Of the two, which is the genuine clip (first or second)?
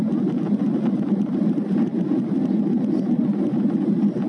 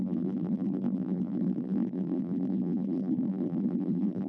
first